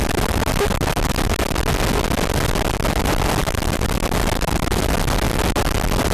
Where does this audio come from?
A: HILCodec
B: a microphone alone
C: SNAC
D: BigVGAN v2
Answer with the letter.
B